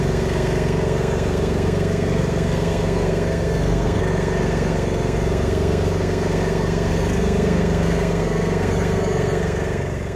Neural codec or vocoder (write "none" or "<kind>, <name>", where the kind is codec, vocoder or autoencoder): codec, SNAC